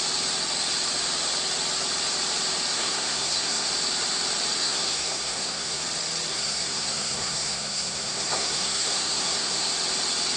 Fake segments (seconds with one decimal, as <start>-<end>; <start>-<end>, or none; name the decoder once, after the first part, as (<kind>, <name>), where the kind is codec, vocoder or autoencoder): 2.7-3.7 (codec, SNAC); 4.6-5.8; 6.3-9.7